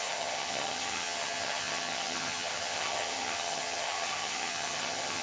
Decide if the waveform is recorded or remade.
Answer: remade